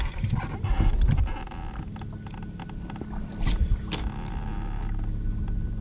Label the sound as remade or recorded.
recorded